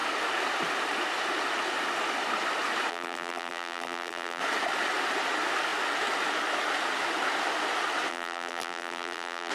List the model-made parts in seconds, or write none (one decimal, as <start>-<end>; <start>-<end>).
2.9-4.4; 8.1-9.5